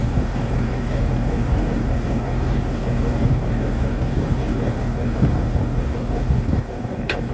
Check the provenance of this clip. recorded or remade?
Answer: remade